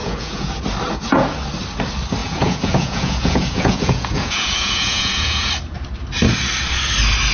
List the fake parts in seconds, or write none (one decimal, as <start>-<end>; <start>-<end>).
0.0-0.6; 2.2-5.5